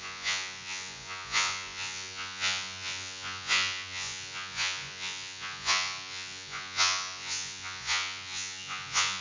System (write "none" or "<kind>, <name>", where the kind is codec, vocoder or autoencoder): vocoder, Vocos